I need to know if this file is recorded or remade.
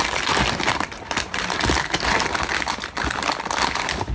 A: recorded